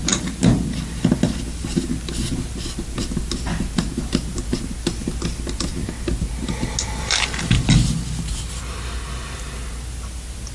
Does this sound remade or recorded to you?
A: recorded